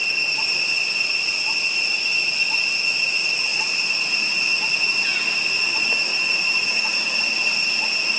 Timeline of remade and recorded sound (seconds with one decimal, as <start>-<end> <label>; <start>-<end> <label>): 0.0-3.5 recorded; 3.5-4.4 remade; 4.4-6.1 recorded; 6.1-7.0 remade; 7.0-8.2 recorded